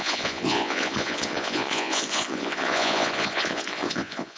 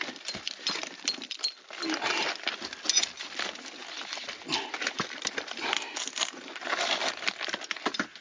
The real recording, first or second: second